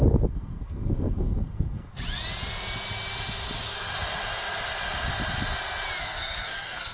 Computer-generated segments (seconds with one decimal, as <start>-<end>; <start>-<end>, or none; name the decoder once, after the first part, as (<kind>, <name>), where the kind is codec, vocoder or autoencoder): 0.0-1.9 (codec, SNAC); 6.0-6.9

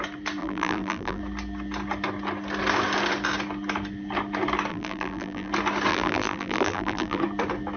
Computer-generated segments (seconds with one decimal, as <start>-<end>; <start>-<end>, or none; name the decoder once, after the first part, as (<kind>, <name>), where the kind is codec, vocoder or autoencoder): 0.4-1.2 (vocoder, BigVGAN v2); 4.7-5.5; 5.9-7.2

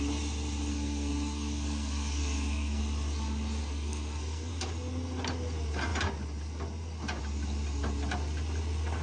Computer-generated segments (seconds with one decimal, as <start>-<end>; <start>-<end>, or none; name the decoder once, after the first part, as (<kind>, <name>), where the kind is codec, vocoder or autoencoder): 0.7-2.8 (codec, SNAC); 3.6-4.5

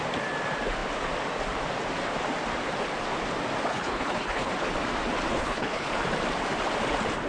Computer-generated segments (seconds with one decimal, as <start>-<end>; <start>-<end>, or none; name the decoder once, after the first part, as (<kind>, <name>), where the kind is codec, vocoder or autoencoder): 3.7-4.5 (codec, HILCodec); 5.3-5.9

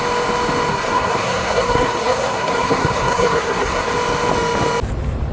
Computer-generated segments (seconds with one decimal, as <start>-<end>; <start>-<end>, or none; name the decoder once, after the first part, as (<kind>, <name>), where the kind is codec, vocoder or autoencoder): 0.7-3.9 (codec, SNAC)

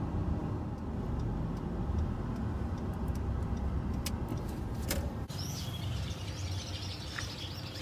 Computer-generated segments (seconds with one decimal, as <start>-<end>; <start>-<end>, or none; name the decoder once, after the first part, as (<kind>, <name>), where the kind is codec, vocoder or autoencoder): 0.4-3.8 (vocoder, BigVGAN v2); 4.3-6.4